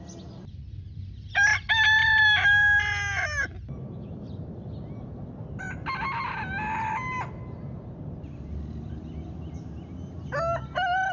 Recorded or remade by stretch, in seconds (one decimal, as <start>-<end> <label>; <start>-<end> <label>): 0.0-11.1 recorded